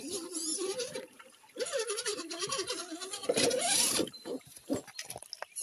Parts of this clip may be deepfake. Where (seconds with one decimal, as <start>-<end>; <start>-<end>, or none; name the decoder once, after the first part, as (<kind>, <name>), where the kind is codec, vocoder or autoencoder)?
0.4-2.8 (vocoder, BigVGAN v2); 3.2-4.9